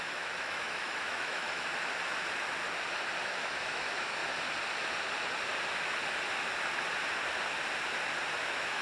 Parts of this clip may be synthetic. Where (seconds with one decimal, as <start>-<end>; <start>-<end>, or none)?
0.0-1.7; 3.2-4.2; 8.4-8.8